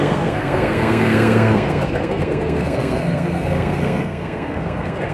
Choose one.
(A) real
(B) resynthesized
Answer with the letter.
B